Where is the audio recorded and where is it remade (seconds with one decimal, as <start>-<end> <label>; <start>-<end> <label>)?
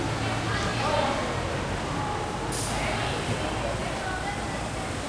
0.0-3.8 recorded; 3.8-4.4 remade; 4.4-5.1 recorded